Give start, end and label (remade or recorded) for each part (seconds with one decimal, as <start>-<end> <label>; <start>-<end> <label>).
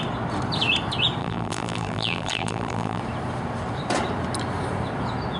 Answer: 0.0-1.2 recorded; 1.2-3.0 remade; 3.0-5.4 recorded